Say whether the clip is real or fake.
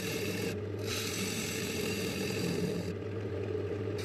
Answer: fake